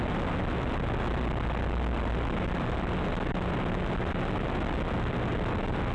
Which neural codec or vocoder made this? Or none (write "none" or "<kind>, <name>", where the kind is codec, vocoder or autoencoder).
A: none